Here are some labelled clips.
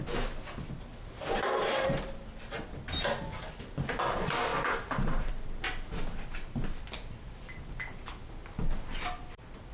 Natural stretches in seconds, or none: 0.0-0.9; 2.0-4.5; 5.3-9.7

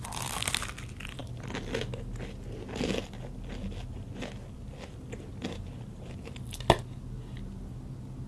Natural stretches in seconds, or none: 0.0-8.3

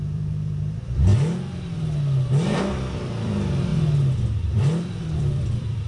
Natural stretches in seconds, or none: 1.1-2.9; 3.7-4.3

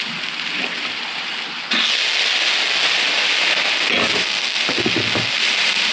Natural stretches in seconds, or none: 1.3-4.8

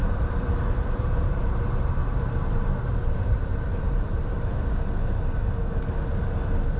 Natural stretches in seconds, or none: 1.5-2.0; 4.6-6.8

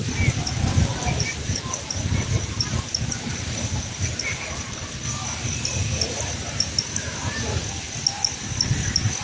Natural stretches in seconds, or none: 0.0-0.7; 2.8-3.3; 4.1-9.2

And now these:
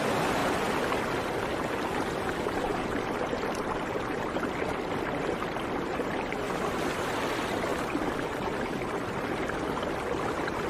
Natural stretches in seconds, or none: 0.0-10.7

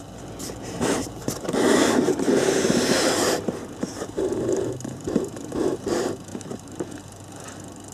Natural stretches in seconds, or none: 0.0-1.2; 5.5-6.3; 7.0-7.9